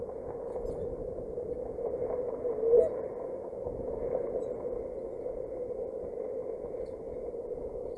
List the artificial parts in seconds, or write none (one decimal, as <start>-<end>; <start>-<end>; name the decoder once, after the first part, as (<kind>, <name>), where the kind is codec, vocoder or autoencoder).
none